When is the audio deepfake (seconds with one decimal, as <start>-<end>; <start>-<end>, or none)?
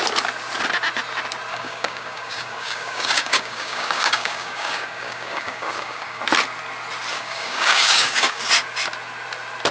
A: 1.5-6.2; 7.1-8.4